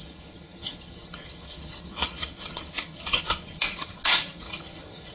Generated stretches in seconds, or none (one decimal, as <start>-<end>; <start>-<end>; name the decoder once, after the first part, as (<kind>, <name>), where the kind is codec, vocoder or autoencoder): 0.0-5.1 (vocoder, HiFi-GAN)